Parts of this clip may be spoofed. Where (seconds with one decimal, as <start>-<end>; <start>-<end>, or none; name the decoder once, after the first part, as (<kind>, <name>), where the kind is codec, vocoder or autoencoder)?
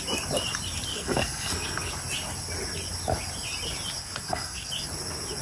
0.9-1.9 (codec, SNAC); 4.0-4.7